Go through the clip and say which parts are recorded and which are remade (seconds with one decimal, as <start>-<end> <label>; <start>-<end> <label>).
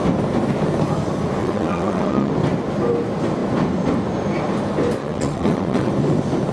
0.0-1.4 recorded; 1.4-2.3 remade; 2.3-5.0 recorded; 5.0-5.9 remade; 5.9-6.5 recorded